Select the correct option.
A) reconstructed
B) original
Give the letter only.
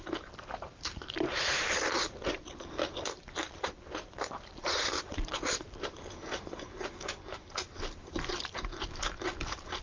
A